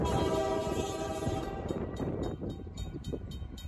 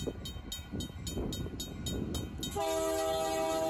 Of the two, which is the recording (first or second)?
second